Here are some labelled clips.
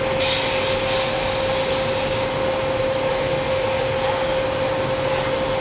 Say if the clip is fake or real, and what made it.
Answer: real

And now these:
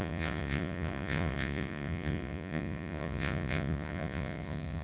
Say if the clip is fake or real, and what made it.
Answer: fake, vocoder, Vocos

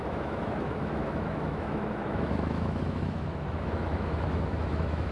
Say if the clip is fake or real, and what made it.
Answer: fake, autoencoder, DAC-VAE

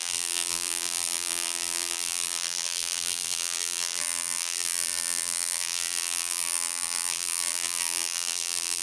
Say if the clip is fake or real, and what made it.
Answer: fake, vocoder, BigVGAN v2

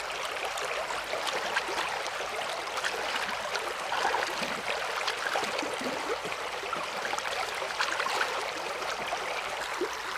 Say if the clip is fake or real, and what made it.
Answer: fake, vocoder, BigVGAN v2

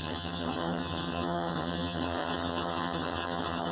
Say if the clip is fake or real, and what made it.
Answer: fake, vocoder, HiFi-GAN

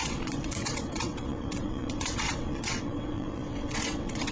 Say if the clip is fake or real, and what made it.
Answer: fake, vocoder, WaveNeXt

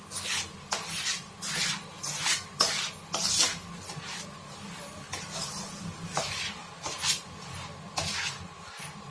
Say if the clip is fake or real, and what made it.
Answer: real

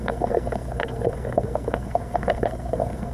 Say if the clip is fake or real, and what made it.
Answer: fake, codec, SNAC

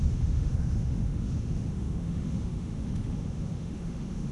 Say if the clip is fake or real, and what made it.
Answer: fake, autoencoder, DAC-VAE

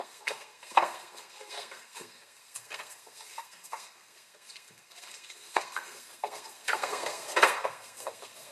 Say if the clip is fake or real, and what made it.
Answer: fake, codec, SNAC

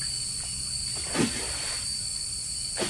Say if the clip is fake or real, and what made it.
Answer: real